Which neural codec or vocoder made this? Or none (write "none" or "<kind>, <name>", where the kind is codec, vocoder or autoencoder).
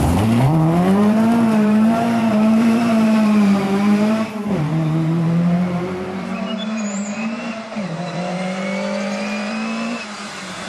vocoder, BigVGAN v2